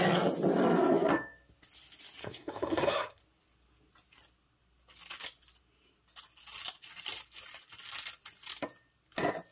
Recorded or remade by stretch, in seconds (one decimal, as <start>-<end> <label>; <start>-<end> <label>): 0.0-2.2 recorded; 2.2-3.2 remade; 3.2-9.5 recorded